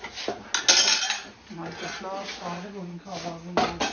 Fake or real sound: real